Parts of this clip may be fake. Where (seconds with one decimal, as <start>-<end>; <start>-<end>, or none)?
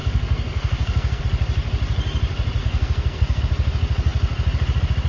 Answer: 0.0-1.2; 2.6-3.4